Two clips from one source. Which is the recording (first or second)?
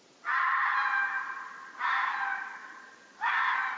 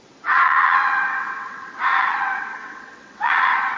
first